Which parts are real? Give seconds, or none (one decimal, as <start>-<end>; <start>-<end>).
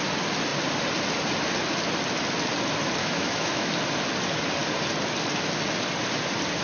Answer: 0.0-3.0; 3.7-6.6